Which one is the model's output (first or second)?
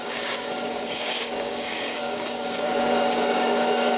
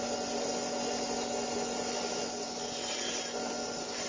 first